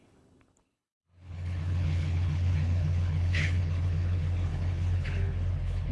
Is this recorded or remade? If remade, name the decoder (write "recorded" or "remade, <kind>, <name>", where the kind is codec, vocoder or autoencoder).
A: remade, codec, HILCodec